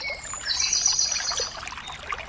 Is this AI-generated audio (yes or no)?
no